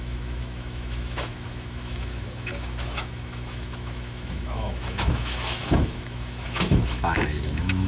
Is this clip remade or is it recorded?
remade